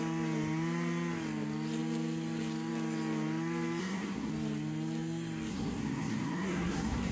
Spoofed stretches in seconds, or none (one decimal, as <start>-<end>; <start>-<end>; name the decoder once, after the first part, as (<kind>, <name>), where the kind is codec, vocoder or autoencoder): 3.8-4.3 (codec, SNAC); 5.5-7.1